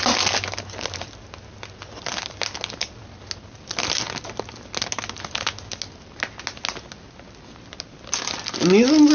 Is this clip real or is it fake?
real